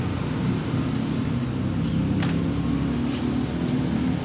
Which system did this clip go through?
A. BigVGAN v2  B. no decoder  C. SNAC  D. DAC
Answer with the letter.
B